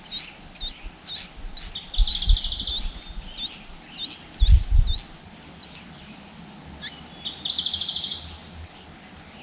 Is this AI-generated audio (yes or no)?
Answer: no